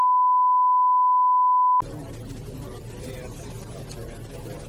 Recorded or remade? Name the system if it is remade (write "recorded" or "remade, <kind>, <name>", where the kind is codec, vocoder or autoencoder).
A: recorded